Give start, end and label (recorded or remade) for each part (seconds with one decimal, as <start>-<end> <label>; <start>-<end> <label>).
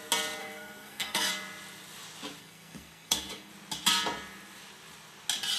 0.0-0.4 recorded; 0.4-1.3 remade; 1.3-2.4 recorded; 2.4-3.5 remade; 3.5-5.6 recorded